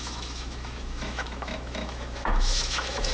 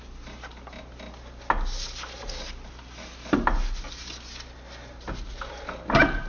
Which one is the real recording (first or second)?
second